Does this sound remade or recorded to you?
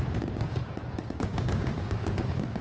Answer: remade